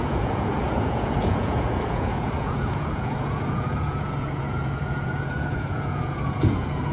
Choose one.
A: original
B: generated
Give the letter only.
B